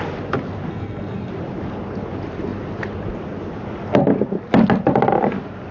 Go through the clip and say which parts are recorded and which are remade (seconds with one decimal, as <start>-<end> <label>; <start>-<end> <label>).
0.0-0.7 recorded; 0.7-1.3 remade; 1.3-5.7 recorded

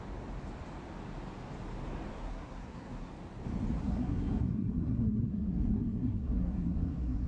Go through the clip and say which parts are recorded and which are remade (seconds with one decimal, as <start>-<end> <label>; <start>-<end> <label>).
0.0-2.1 recorded; 2.1-3.1 remade; 3.1-3.8 recorded; 3.8-7.3 remade